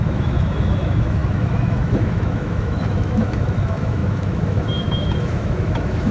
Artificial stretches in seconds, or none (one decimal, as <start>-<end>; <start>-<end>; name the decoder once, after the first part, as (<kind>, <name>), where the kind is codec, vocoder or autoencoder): 0.0-6.1 (autoencoder, DAC-VAE)